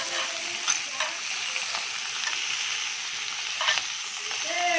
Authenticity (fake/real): real